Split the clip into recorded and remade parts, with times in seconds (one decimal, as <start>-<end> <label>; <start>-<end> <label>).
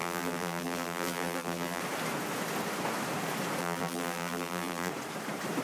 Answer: 0.0-1.8 remade; 1.8-3.6 recorded; 3.6-4.9 remade; 4.9-5.6 recorded